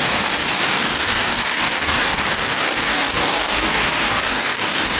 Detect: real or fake fake